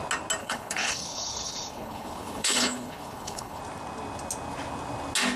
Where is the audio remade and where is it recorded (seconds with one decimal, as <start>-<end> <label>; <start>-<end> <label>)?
0.0-0.4 recorded; 0.4-3.6 remade; 3.6-5.4 recorded

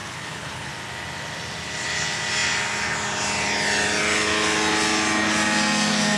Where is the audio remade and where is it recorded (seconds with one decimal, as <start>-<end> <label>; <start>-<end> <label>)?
0.0-0.7 remade; 0.7-6.2 recorded